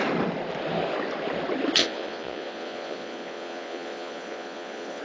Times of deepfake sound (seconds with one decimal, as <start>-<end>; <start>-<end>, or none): 1.8-5.0